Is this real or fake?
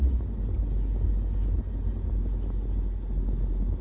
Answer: real